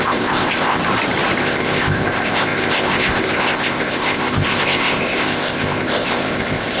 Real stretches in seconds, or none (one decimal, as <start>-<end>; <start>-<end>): 0.8-1.4